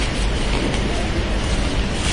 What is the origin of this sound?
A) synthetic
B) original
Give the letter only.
B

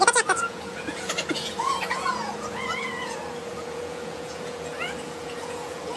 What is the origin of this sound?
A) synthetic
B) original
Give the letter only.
A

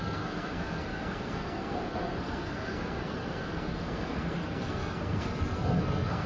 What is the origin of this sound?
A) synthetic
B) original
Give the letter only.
A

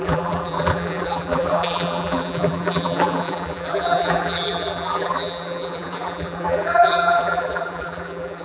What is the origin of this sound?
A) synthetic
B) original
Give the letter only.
A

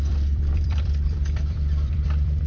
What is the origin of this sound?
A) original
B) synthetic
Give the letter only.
B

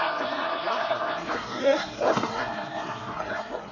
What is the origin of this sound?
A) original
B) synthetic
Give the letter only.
B